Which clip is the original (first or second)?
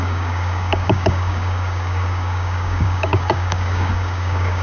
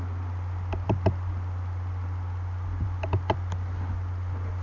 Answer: second